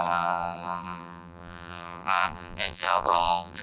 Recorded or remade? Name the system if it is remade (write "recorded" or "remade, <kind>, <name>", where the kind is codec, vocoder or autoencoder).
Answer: remade, vocoder, BigVGAN v2